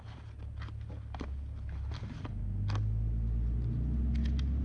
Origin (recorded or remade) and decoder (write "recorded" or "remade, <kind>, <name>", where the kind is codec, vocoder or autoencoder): recorded